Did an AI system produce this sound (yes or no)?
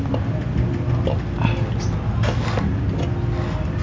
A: no